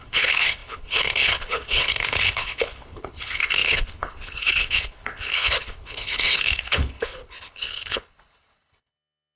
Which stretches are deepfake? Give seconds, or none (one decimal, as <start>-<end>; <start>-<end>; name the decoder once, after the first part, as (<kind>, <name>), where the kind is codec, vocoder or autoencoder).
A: 0.0-9.4 (codec, HILCodec)

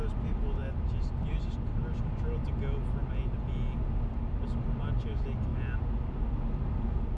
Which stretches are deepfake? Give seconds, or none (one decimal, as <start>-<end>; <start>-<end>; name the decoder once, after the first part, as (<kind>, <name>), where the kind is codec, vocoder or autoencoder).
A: none